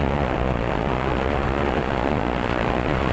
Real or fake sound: fake